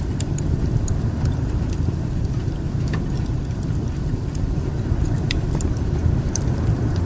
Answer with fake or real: fake